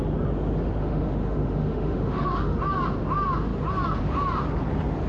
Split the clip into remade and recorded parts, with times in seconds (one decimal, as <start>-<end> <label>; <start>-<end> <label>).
0.0-0.8 recorded; 0.8-2.6 remade; 2.6-5.1 recorded